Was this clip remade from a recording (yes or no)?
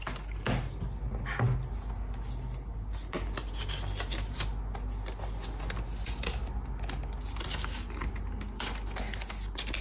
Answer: no